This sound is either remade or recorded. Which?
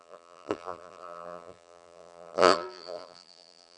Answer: remade